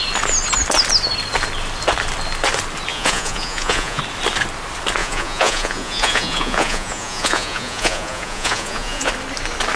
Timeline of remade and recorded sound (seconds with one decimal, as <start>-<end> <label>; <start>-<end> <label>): 0.0-2.9 recorded; 2.9-4.0 remade; 4.0-5.0 recorded; 5.0-9.1 remade; 9.1-9.8 recorded